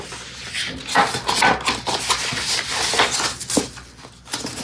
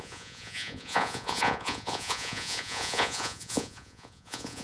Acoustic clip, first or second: first